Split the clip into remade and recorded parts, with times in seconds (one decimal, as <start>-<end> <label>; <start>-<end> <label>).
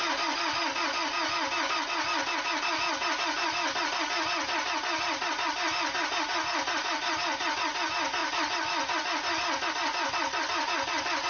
0.0-11.3 recorded